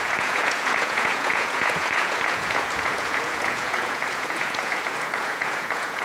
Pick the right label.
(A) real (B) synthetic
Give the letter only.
B